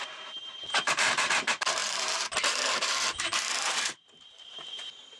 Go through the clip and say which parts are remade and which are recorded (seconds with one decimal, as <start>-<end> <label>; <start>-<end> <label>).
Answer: 0.0-5.2 remade